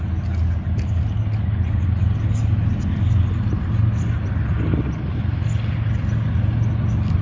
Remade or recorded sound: recorded